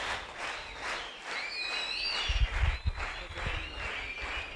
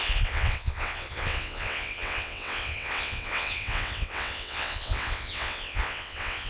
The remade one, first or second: second